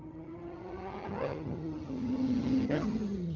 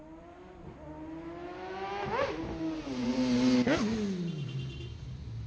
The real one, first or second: second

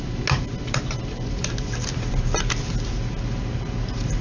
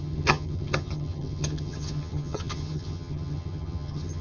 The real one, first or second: first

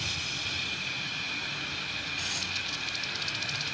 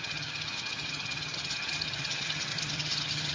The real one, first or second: first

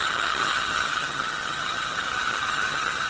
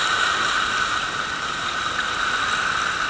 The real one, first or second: second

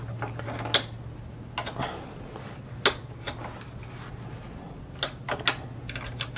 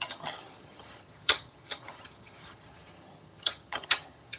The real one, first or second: first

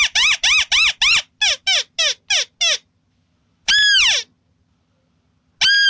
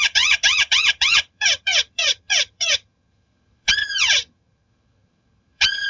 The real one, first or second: first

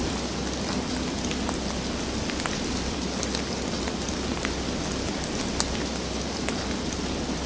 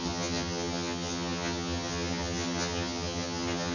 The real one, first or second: first